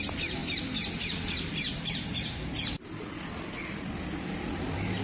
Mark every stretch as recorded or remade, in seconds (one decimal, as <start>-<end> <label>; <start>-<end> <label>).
0.0-0.4 recorded; 0.4-3.2 remade; 3.2-5.0 recorded